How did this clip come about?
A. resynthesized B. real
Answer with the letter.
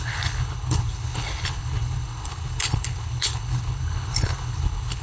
A